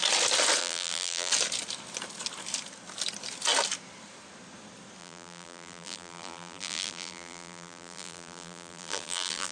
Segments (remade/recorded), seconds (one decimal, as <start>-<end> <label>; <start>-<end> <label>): 0.0-0.6 recorded; 0.6-1.3 remade; 1.3-5.0 recorded; 5.0-9.5 remade